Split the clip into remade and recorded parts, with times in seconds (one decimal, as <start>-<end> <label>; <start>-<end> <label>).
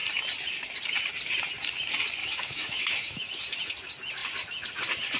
0.0-2.2 recorded; 2.2-3.3 remade; 3.3-5.2 recorded